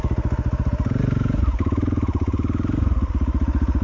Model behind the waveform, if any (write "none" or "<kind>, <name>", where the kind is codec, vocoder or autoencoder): none